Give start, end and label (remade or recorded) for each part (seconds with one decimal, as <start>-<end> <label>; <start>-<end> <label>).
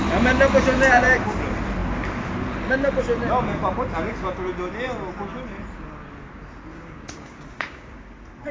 0.0-6.7 recorded; 6.7-7.9 remade; 7.9-8.5 recorded